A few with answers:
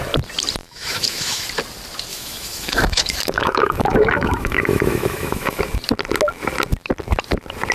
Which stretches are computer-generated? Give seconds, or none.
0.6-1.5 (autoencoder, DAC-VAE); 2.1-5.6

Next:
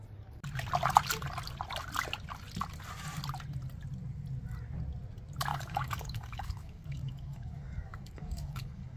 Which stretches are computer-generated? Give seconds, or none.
5.5-9.0 (codec, DAC)

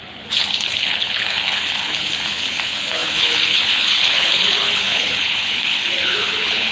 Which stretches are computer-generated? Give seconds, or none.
0.0-6.7 (codec, HILCodec)

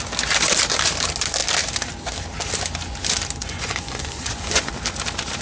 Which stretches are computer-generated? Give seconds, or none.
3.4-4.7 (vocoder, Vocos)

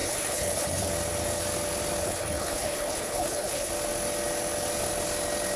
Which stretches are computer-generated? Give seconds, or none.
0.0-0.9 (codec, HILCodec); 2.0-3.7

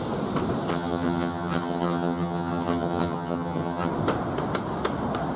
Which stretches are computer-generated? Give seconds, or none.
0.7-3.9 (vocoder, HiFi-GAN)

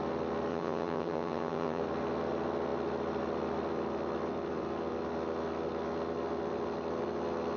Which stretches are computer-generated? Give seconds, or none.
0.5-1.8 (vocoder, HiFi-GAN)

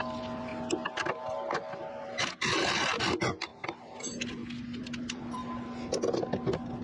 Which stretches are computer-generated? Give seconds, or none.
0.0-0.5 (vocoder, BigVGAN v2); 1.9-3.5; 4.0-4.4; 5.0-5.4